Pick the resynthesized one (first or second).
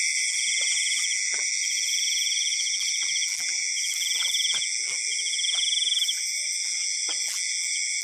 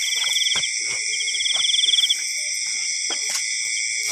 first